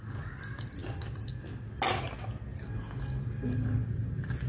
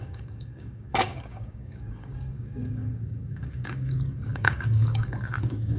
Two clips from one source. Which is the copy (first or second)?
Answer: second